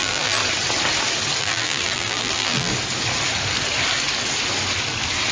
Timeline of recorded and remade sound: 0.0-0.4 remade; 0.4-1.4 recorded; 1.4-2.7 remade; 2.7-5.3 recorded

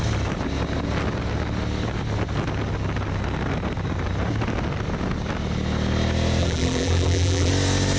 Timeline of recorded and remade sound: 0.0-6.4 recorded; 6.4-7.5 remade; 7.5-8.0 recorded

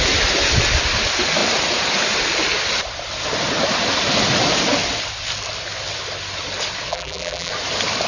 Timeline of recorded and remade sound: 0.0-6.9 recorded; 6.9-7.5 remade; 7.5-8.1 recorded

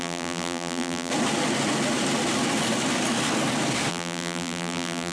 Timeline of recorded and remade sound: 0.0-1.1 remade; 1.1-3.9 recorded; 3.9-5.1 remade

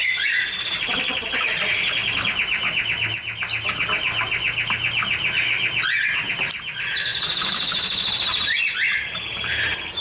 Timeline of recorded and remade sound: 0.0-2.0 remade; 2.0-6.3 recorded; 6.3-10.0 remade

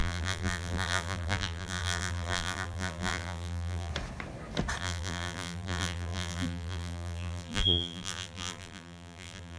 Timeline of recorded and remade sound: 0.0-3.9 remade; 3.9-4.8 recorded; 4.8-9.6 remade

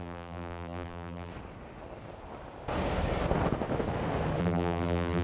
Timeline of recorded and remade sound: 0.0-1.3 remade; 1.3-4.4 recorded; 4.4-5.2 remade